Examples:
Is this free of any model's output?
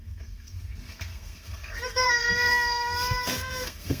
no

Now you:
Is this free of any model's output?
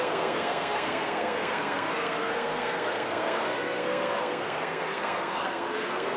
no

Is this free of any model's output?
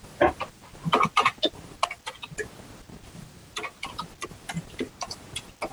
yes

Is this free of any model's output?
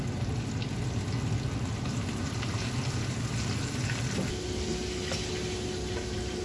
yes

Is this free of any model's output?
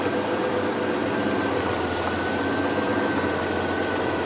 yes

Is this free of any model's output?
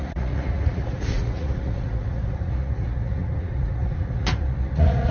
no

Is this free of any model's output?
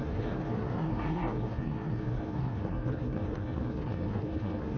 no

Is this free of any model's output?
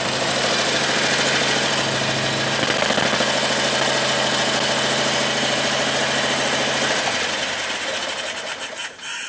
yes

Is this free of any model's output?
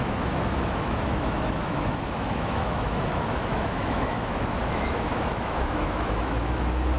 no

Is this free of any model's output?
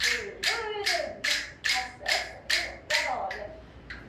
no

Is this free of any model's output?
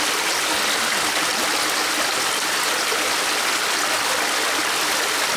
yes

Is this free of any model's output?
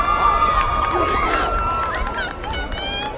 yes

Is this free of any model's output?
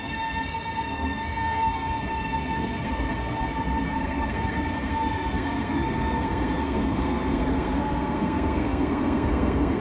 no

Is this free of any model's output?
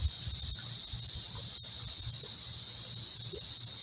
yes